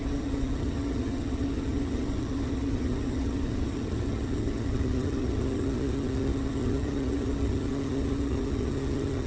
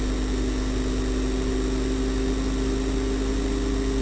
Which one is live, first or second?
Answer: second